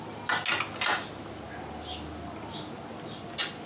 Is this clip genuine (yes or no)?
yes